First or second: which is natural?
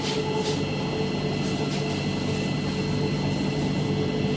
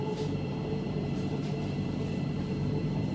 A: first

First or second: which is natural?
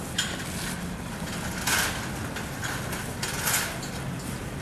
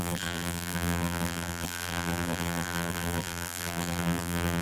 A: first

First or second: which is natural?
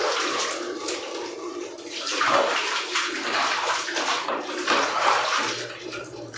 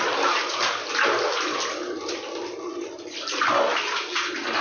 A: second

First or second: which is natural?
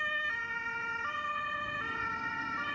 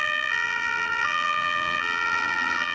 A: first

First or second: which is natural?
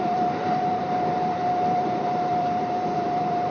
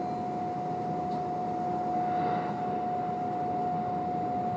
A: second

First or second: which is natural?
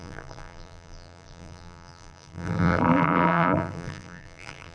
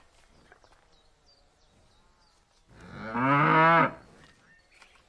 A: second